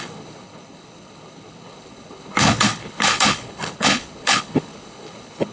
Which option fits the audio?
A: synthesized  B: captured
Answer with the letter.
A